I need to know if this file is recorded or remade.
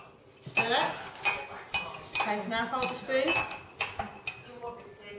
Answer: recorded